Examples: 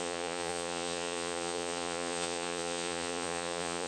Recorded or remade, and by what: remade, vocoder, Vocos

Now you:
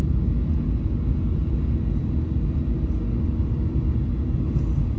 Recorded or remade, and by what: recorded